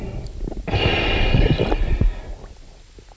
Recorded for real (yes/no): yes